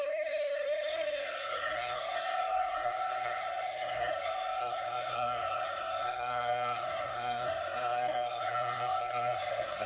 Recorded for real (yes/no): no